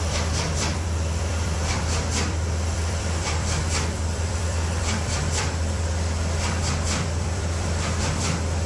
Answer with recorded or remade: remade